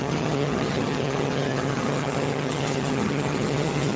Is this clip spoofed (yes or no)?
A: yes